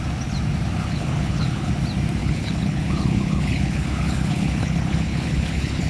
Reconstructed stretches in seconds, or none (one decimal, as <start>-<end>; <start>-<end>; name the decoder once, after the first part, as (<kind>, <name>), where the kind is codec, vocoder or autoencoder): 0.8-1.7 (codec, HILCodec); 2.2-5.9